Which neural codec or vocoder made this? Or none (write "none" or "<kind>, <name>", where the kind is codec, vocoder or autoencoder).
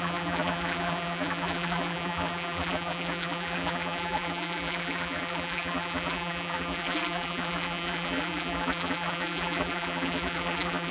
vocoder, BigVGAN v2